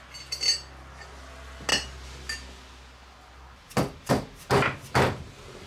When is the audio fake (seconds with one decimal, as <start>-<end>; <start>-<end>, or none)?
none